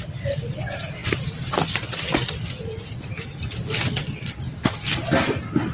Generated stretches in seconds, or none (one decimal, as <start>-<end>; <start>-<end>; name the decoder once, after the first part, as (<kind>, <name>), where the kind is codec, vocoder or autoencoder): none